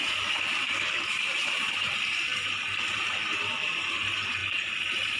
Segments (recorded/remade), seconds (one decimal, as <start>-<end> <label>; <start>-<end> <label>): 0.0-2.3 remade; 2.3-2.9 recorded; 2.9-5.2 remade